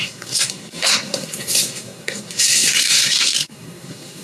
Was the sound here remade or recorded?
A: remade